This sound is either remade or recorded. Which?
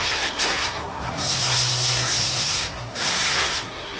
remade